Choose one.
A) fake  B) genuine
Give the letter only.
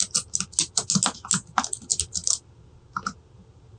B